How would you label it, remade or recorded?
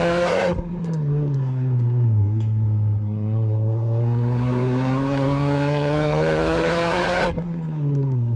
remade